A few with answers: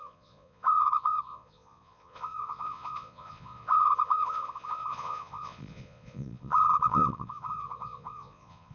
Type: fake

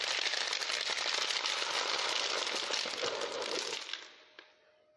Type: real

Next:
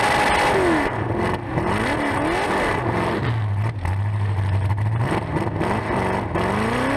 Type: real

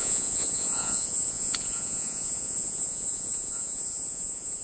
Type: fake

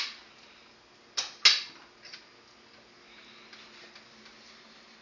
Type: real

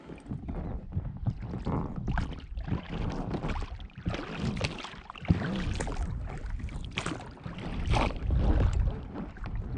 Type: real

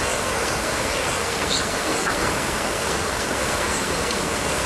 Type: fake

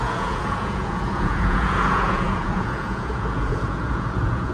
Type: fake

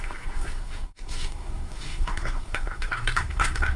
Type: fake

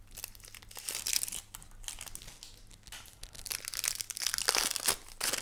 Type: real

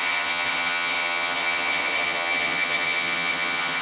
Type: fake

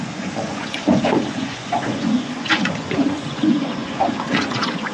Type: fake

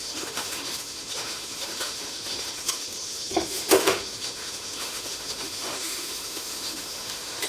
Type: fake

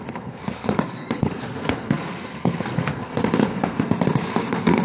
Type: fake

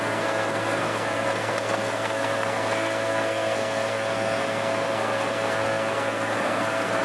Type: fake